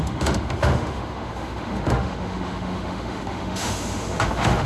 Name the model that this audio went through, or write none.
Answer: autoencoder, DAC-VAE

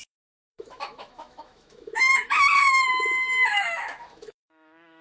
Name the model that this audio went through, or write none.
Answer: autoencoder, DAC-VAE